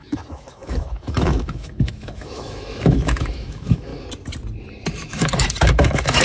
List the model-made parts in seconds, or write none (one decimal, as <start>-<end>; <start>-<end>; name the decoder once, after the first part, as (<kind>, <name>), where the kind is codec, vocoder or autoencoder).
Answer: 0.0-3.9 (autoencoder, DAC-VAE); 4.9-6.2